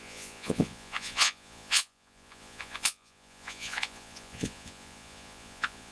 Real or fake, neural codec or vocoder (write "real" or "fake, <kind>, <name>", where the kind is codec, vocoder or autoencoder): fake, vocoder, Vocos